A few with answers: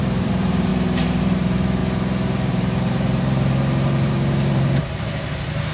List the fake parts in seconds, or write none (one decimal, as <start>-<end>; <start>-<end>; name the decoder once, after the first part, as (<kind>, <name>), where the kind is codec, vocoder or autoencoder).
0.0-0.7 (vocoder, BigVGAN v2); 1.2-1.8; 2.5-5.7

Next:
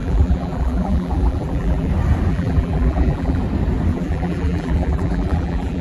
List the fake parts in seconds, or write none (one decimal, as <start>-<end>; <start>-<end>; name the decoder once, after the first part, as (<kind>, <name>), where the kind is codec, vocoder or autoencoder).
0.0-1.9 (vocoder, BigVGAN v2); 2.3-3.4; 3.9-5.8

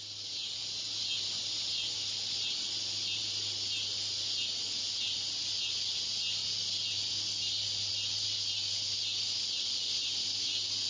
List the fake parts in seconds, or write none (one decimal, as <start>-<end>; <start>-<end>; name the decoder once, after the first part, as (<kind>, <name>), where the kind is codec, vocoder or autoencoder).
none

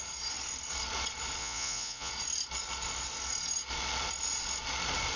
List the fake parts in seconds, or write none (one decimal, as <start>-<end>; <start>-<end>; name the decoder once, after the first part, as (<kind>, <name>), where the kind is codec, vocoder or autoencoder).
1.4-2.1 (vocoder, Vocos)

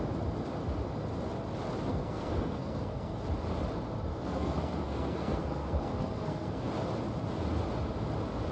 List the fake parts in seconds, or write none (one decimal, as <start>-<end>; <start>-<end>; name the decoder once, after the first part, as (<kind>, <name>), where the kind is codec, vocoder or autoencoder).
1.9-3.2 (codec, SNAC); 4.1-6.7

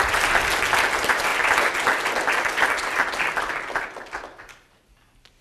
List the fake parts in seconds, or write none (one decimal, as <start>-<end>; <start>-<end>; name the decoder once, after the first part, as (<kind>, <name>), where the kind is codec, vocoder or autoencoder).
none

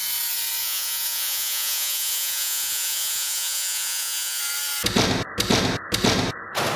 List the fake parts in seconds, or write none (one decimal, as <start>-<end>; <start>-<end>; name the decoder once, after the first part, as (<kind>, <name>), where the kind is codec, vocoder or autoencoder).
0.6-4.4 (vocoder, Vocos)